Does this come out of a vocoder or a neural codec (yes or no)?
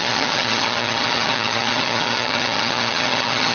yes